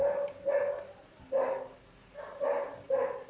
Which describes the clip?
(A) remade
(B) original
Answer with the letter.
B